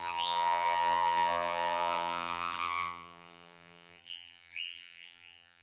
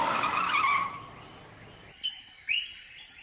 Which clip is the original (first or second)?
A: second